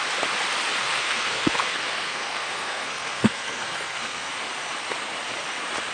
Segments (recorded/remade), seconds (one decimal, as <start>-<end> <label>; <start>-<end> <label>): 0.0-0.8 recorded; 0.8-4.3 remade; 4.3-5.9 recorded